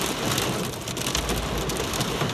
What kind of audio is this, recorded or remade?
recorded